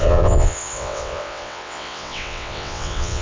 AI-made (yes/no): yes